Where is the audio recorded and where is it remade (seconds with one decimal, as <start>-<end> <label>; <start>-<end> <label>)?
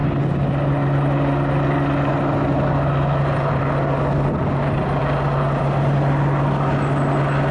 0.0-7.5 recorded